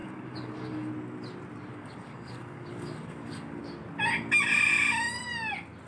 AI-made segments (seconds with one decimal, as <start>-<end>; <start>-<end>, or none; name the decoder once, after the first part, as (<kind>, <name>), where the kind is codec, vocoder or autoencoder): 0.0-0.9 (codec, DAC); 1.7-3.6

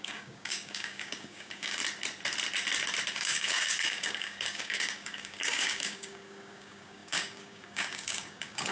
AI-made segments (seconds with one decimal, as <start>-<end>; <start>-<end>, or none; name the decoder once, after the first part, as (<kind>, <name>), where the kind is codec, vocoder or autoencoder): 0.0-1.8 (codec, DAC); 3.1-8.7